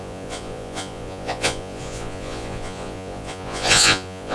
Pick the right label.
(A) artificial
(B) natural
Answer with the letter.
A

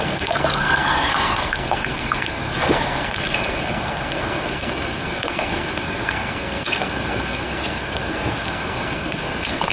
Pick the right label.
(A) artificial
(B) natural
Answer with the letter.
A